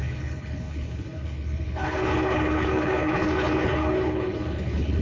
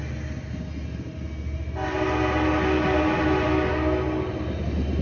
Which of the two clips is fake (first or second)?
first